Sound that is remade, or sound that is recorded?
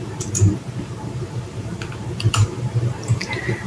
remade